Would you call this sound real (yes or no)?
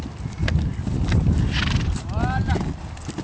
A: yes